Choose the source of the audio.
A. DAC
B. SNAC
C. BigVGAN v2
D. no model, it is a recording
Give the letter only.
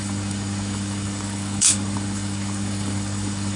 A